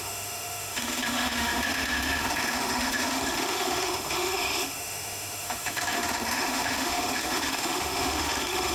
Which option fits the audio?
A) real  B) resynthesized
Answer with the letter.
B